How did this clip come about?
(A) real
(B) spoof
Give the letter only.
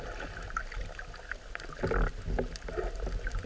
A